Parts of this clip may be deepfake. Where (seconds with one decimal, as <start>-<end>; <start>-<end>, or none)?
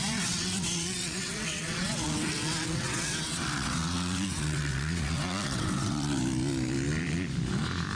0.0-6.2